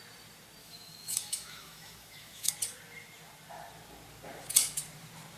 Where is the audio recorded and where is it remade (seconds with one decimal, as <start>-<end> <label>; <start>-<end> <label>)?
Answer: 0.0-0.6 recorded; 0.6-2.5 remade; 2.5-5.4 recorded